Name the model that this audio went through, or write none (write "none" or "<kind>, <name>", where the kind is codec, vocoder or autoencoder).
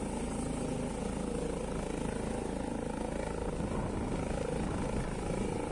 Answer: none